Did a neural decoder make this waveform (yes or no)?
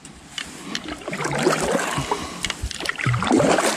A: no